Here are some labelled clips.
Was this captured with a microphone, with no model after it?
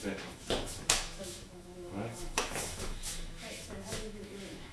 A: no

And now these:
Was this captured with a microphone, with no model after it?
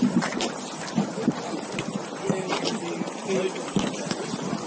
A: yes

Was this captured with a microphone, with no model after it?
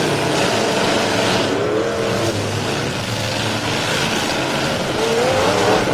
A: yes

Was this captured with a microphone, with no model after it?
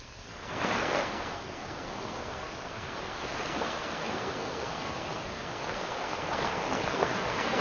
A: no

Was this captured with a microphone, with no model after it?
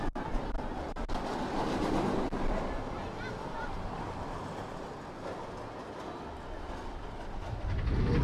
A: yes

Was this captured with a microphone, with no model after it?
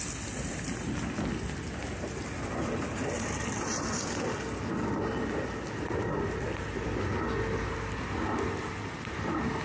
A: yes